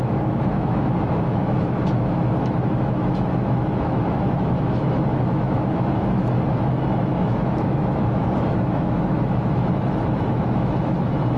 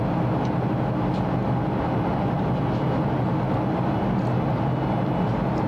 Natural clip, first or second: second